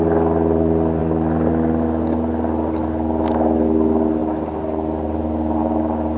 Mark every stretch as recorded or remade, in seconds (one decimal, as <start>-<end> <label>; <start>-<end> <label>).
0.0-6.2 recorded